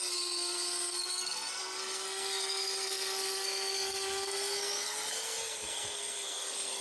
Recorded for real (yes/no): no